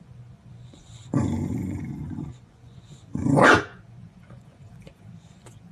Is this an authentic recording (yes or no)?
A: no